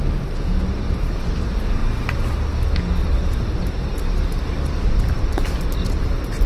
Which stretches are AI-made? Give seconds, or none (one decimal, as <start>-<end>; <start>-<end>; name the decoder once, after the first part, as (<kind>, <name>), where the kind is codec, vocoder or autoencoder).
1.8-2.4 (vocoder, BigVGAN v2); 3.0-3.7